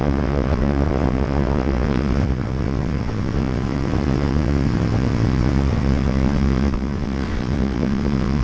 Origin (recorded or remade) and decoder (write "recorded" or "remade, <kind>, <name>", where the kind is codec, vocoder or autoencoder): remade, vocoder, WaveNeXt